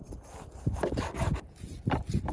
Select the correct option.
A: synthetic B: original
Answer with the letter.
B